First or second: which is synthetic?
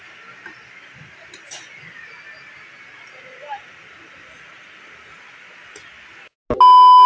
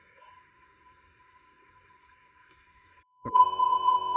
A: second